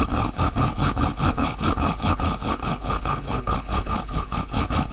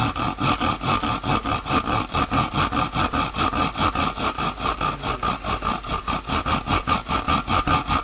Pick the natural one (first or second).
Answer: second